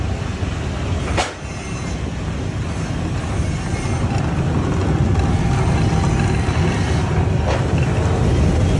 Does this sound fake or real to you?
real